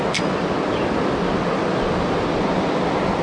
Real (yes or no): yes